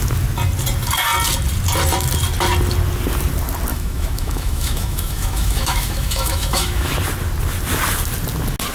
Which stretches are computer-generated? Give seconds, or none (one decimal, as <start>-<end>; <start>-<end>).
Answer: 3.7-6.9